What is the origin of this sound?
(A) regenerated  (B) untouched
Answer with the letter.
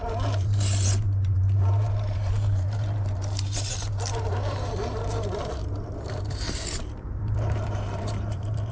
A